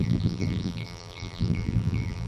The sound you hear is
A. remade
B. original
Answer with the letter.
A